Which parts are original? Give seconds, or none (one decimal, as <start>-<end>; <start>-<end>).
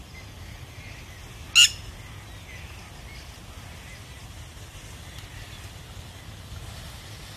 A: 0.0-4.2; 6.6-7.4